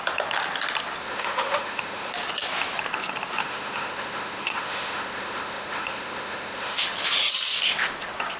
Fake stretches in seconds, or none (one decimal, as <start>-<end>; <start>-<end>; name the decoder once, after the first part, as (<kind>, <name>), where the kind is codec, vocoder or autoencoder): 1.0-2.1 (autoencoder, DAC-VAE); 3.4-6.8